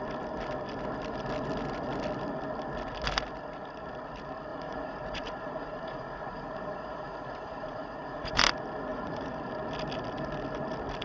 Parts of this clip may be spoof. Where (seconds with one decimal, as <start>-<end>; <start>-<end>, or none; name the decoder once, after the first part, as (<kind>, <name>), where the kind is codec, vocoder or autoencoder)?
4.5-8.4 (vocoder, Vocos); 8.9-9.5